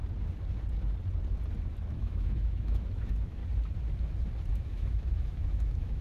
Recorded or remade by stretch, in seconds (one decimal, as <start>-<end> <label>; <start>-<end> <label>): 0.0-1.9 recorded; 1.9-3.4 remade; 3.4-4.5 recorded; 4.5-6.0 remade